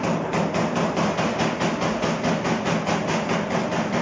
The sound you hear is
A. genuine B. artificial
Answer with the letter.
A